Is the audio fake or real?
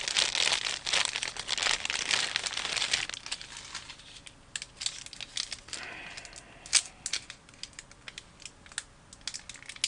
real